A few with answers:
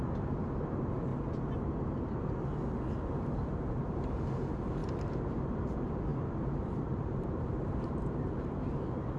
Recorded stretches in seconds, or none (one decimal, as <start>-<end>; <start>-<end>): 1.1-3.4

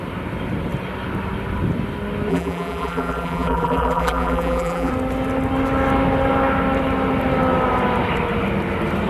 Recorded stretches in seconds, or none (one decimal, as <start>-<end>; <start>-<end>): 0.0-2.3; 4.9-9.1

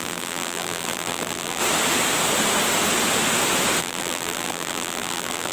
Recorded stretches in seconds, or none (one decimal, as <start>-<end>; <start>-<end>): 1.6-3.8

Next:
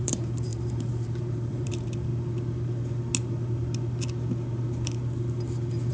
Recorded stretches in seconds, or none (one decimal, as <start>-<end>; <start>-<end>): 2.1-5.9